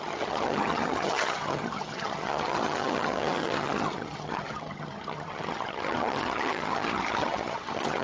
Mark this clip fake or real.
fake